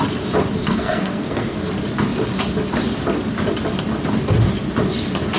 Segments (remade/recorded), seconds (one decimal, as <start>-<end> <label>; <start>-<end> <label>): 0.0-0.6 recorded; 0.6-1.7 remade; 1.7-5.4 recorded